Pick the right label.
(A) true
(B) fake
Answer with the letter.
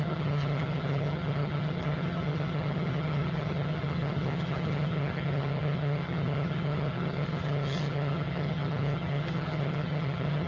B